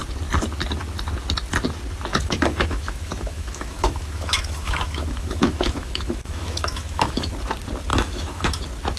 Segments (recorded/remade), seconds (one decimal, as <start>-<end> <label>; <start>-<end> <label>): 0.0-2.1 recorded; 2.1-7.3 remade; 7.3-7.9 recorded; 7.9-8.6 remade; 8.6-9.0 recorded